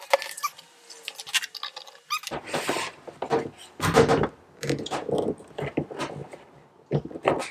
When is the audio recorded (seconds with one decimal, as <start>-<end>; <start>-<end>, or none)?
0.0-7.5

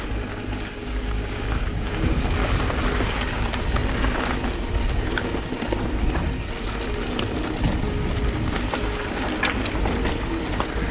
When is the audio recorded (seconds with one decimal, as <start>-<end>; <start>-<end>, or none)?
0.0-0.8; 2.2-10.9

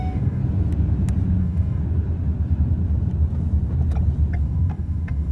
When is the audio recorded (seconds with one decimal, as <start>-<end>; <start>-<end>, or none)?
0.4-1.4; 1.8-4.4

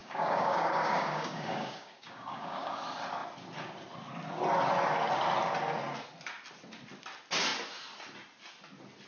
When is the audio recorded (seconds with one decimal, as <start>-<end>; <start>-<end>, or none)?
2.8-9.1